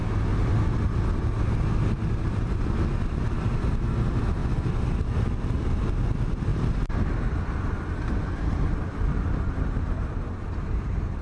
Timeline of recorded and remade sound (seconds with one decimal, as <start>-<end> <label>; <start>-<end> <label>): 0.0-11.2 recorded